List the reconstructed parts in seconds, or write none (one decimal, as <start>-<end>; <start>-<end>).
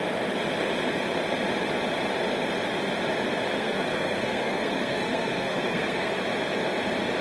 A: 3.6-6.1